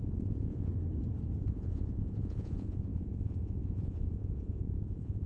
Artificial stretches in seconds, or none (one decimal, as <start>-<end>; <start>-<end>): 0.0-0.7; 1.4-5.3